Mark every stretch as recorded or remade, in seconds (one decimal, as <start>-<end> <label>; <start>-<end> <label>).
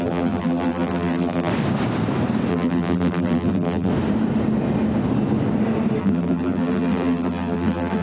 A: 0.0-1.5 remade; 1.5-2.5 recorded; 2.5-3.9 remade; 3.9-6.0 recorded; 6.0-8.0 remade